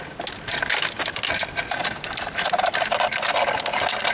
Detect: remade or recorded recorded